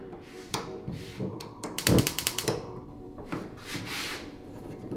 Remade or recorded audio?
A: remade